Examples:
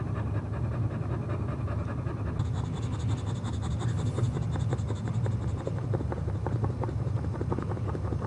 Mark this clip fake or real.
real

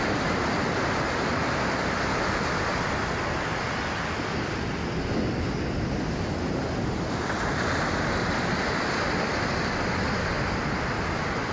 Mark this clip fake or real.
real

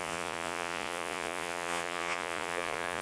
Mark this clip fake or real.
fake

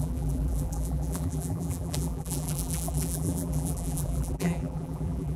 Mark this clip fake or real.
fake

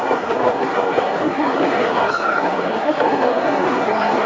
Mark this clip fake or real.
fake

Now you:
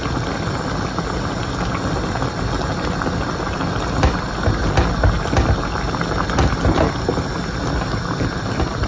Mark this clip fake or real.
real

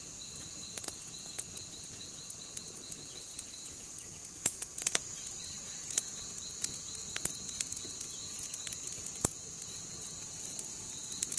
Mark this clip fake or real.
fake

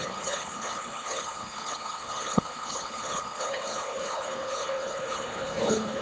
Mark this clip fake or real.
fake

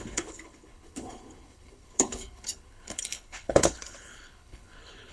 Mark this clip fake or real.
fake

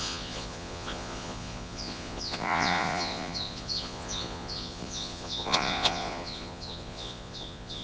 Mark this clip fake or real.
fake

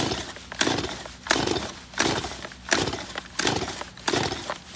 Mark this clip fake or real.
real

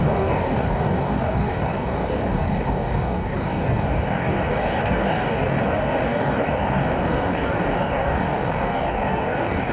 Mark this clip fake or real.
fake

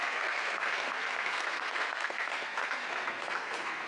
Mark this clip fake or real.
fake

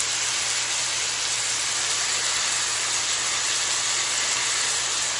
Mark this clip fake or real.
real